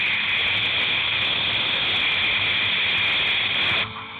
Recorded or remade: recorded